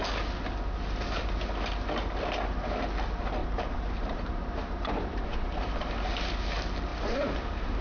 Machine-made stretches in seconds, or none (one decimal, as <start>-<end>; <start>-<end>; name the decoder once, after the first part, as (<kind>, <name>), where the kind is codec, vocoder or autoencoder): 3.4-5.9 (vocoder, BigVGAN v2); 6.9-7.8